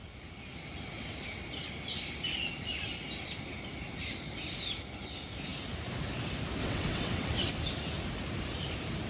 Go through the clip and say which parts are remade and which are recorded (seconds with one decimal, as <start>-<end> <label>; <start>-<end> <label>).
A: 0.0-6.6 recorded; 6.6-7.5 remade; 7.5-9.1 recorded